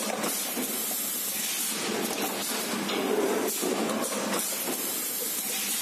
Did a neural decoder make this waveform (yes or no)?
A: no